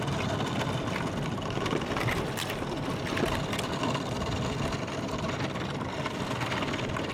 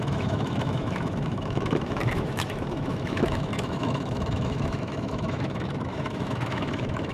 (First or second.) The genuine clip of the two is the first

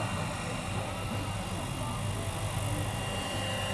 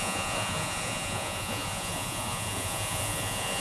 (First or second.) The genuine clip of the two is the first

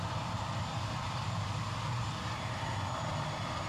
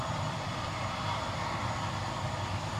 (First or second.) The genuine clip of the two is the first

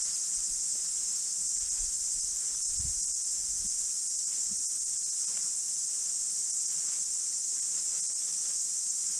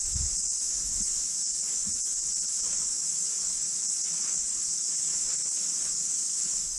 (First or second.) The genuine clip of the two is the first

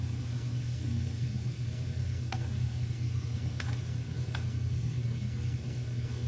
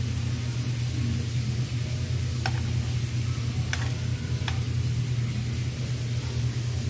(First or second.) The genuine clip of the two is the second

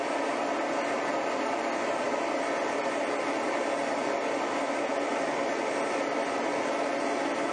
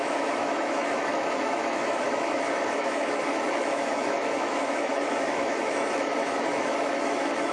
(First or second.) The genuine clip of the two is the first